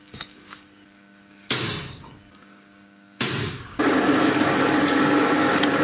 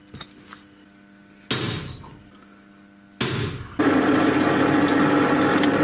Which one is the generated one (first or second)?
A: first